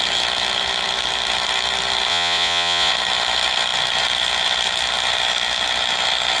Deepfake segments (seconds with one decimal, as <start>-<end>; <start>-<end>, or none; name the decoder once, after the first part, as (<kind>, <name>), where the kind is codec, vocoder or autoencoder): 2.1-2.9 (vocoder, Vocos)